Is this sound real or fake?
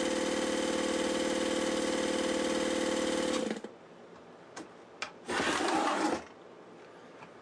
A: real